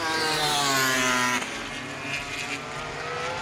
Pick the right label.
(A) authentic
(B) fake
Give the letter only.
A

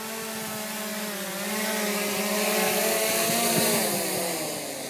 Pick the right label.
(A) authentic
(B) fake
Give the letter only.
A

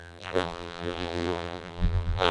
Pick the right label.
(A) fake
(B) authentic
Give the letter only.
A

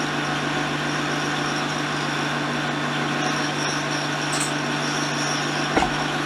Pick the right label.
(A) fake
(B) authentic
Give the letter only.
B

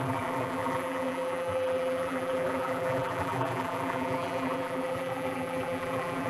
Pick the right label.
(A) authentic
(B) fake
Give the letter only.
B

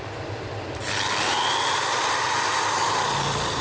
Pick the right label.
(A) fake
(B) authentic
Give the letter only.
A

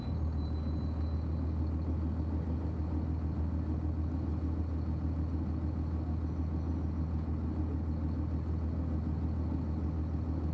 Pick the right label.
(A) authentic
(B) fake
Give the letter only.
A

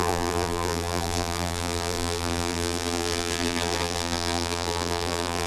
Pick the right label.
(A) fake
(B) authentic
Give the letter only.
A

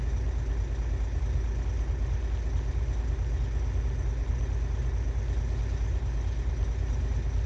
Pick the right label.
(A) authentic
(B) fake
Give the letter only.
A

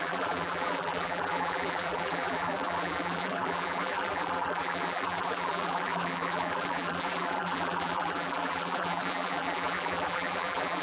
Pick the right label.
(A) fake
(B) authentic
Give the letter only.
A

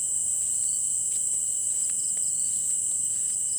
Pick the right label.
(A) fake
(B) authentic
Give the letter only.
B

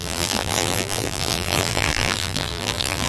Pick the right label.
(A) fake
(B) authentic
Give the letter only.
A